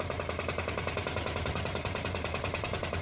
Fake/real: fake